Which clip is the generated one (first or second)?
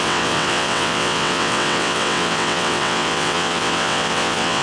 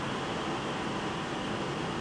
first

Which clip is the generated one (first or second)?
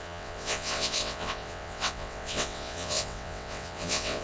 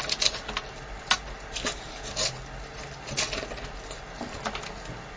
first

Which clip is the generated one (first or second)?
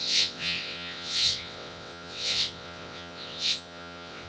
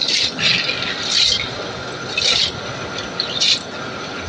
first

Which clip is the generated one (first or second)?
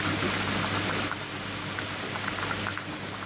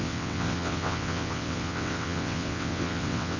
second